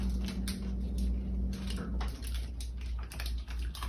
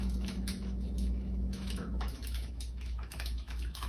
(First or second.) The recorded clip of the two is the first